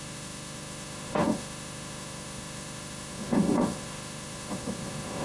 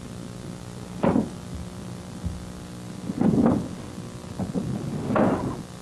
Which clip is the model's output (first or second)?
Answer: first